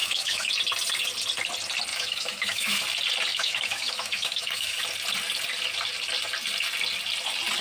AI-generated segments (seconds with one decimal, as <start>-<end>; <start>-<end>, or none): 0.0-0.5; 1.9-2.8; 3.3-4.8